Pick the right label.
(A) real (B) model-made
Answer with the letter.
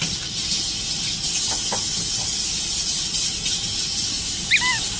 A